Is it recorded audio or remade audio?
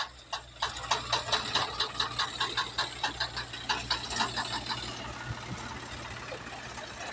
recorded